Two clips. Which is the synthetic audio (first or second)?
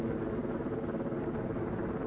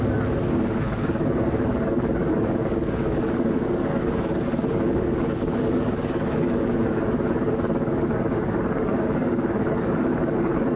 second